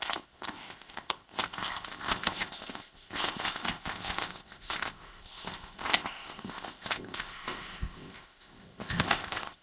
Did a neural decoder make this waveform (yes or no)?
yes